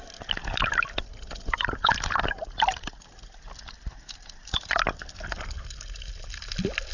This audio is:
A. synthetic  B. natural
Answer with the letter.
B